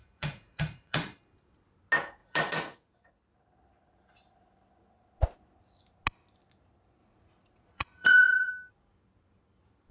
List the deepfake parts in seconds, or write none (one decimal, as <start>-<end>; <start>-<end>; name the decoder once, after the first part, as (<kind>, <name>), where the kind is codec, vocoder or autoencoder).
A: 0.0-1.2 (vocoder, Vocos); 2.2-3.1; 7.0-8.5